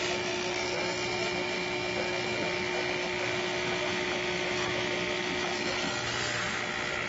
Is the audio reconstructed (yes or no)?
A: no